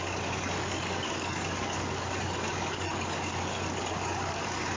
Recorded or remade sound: remade